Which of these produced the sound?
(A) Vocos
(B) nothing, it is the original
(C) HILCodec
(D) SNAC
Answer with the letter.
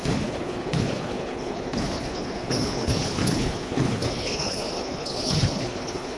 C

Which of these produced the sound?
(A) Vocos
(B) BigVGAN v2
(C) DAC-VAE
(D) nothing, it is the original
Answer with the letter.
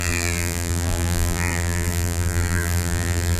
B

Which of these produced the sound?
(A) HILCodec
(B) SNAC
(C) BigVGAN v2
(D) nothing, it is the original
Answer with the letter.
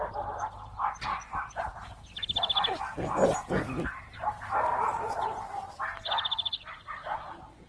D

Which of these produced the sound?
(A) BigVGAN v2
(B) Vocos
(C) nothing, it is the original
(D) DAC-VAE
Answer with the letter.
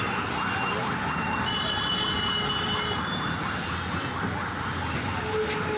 C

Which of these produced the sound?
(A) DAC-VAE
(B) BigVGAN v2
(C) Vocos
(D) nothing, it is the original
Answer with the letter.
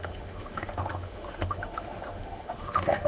A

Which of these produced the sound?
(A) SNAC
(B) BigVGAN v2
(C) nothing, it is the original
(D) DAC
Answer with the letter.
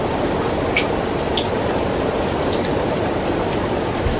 C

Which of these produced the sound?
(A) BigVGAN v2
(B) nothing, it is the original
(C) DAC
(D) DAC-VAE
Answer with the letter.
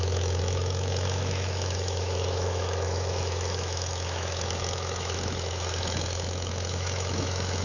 D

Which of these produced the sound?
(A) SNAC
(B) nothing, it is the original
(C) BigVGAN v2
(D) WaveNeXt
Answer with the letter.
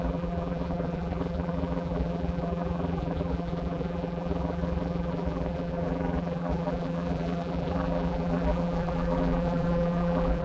C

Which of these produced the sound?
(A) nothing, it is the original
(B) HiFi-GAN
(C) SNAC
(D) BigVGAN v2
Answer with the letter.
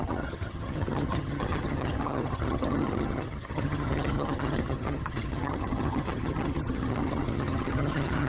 B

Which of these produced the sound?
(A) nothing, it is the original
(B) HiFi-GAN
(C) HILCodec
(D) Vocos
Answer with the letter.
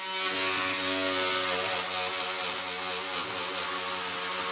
A